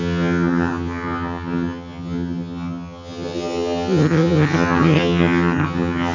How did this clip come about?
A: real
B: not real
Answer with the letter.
B